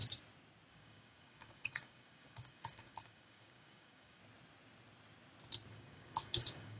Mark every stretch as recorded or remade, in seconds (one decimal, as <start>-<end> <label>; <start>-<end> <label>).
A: 0.0-0.7 recorded; 0.7-4.2 remade; 4.2-5.7 recorded; 5.7-6.8 remade